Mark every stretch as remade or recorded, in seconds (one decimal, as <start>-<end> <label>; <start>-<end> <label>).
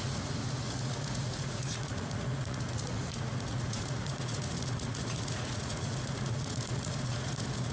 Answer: 0.0-7.7 remade